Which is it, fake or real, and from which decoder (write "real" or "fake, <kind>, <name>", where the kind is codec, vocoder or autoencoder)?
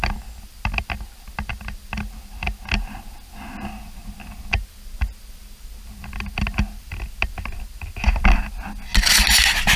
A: real